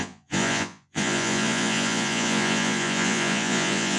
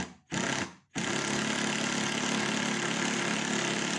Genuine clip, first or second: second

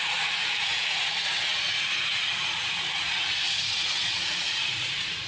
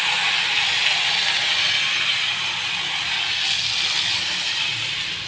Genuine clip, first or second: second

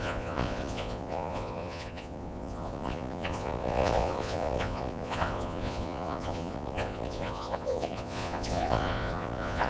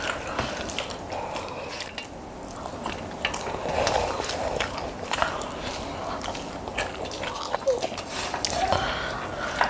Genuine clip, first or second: second